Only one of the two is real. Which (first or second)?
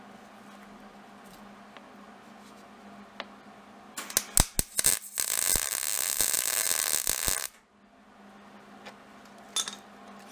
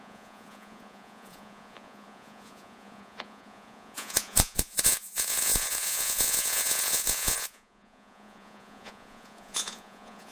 first